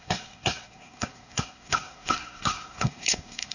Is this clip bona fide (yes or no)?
no